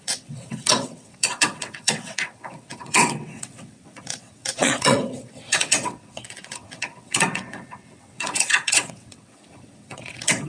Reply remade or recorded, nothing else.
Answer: remade